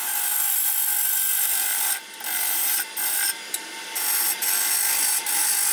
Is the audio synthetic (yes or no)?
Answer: no